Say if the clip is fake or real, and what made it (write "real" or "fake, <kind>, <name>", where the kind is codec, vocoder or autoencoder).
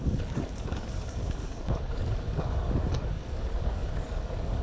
fake, codec, DAC